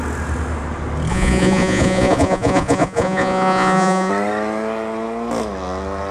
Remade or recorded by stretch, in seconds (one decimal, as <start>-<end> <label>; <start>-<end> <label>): 0.0-1.1 recorded; 1.1-4.1 remade; 4.1-6.1 recorded